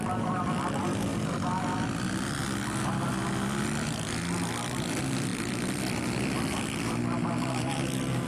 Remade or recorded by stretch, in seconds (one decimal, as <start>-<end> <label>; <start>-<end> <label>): 0.0-8.3 recorded

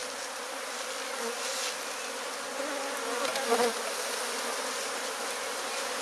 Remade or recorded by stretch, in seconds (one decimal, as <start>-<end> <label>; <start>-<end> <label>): 0.0-6.0 recorded

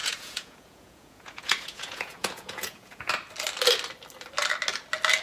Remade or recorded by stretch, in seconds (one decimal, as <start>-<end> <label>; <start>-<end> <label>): 0.0-3.1 remade; 3.1-5.2 recorded

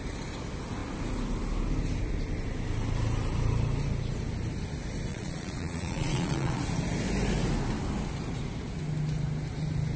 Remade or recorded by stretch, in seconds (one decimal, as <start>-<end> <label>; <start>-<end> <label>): 0.0-5.1 recorded; 5.1-6.6 remade; 6.6-10.0 recorded

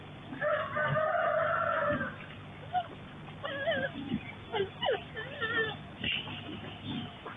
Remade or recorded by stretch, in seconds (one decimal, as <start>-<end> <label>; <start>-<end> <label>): 0.0-7.4 recorded

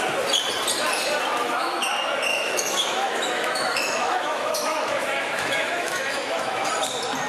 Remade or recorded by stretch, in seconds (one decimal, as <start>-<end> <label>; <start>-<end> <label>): 0.0-1.4 recorded; 1.4-1.9 remade; 1.9-2.3 recorded; 2.3-6.7 remade; 6.7-7.3 recorded